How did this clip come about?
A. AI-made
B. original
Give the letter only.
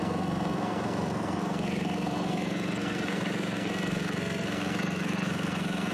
A